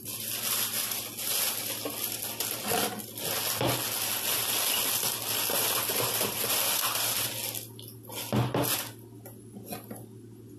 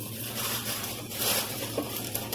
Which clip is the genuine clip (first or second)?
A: first